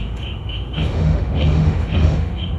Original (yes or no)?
no